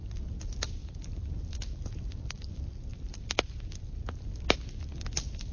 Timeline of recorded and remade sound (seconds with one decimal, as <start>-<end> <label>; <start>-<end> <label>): 0.0-0.8 recorded; 0.8-1.5 remade; 1.5-2.9 recorded; 2.9-3.9 remade; 3.9-5.5 recorded